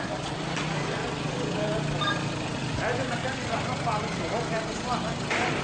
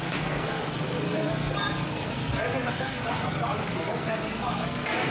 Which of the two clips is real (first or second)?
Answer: first